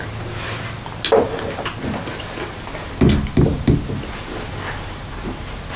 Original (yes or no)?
yes